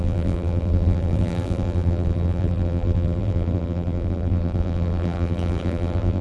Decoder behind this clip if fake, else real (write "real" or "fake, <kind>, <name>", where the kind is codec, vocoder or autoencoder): fake, vocoder, BigVGAN v2